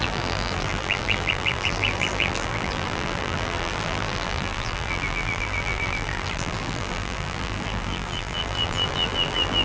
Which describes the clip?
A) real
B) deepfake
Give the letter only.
B